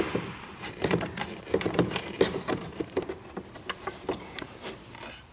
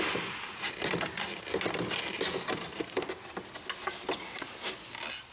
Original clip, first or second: second